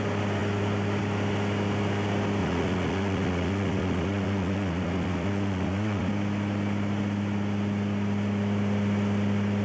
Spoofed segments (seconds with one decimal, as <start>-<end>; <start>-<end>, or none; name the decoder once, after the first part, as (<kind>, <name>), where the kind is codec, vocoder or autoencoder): 2.4-6.1 (vocoder, Vocos)

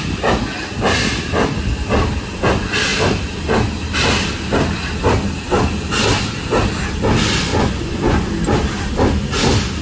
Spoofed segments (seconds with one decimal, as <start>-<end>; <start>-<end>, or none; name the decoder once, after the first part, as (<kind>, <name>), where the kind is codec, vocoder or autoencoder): 7.5-8.3 (vocoder, Vocos)

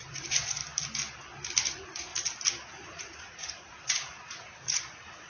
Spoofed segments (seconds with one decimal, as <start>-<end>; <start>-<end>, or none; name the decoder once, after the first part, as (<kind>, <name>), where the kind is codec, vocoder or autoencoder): 0.0-0.6 (vocoder, Vocos); 1.7-2.1; 2.7-5.3

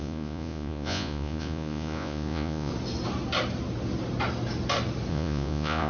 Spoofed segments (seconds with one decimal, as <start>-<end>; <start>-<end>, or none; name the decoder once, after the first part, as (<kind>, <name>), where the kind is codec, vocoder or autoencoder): 0.0-2.7 (vocoder, Vocos); 5.1-5.9

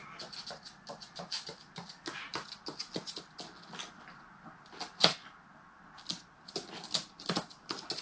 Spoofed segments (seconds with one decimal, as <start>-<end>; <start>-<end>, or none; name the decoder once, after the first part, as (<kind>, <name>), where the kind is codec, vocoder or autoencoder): none

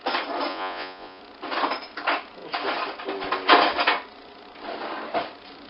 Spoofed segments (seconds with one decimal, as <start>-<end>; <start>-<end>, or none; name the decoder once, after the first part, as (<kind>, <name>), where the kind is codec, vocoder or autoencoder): 0.5-1.2 (vocoder, Vocos)